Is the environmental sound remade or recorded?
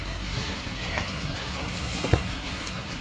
remade